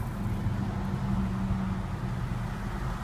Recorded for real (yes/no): yes